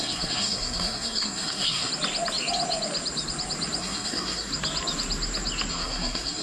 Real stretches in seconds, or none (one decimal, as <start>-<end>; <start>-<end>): 1.9-3.8; 4.5-5.7